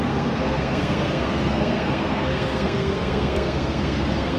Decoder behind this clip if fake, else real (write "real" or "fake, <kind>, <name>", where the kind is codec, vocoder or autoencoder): fake, codec, SNAC